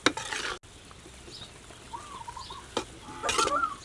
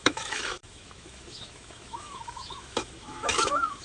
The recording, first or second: first